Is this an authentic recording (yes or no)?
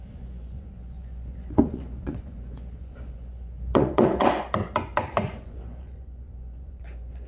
no